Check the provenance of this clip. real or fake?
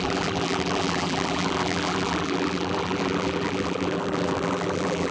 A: fake